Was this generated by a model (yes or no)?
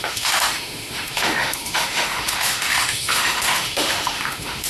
yes